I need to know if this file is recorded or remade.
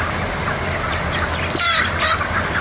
recorded